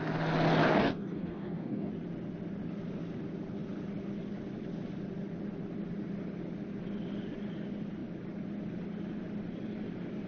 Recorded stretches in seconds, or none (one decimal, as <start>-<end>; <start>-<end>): 0.0-0.7; 1.9-10.3